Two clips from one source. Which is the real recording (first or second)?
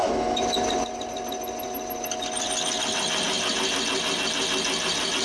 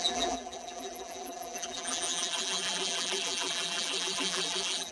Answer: first